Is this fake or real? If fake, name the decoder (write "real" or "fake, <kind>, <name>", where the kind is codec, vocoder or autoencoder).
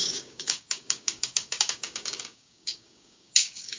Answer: fake, codec, DAC